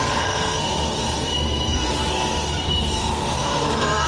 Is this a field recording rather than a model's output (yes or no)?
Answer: no